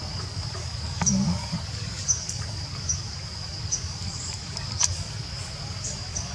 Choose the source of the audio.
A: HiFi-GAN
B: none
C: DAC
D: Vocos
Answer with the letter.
C